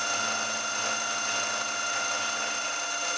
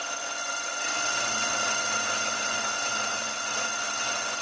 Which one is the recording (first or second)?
first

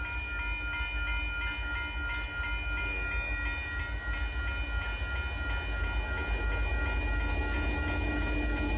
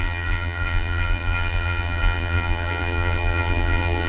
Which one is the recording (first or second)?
first